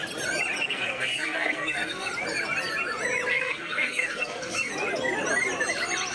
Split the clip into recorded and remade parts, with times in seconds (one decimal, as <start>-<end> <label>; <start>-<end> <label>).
0.0-0.6 recorded; 0.6-2.1 remade; 2.1-3.3 recorded; 3.3-4.7 remade; 4.7-6.1 recorded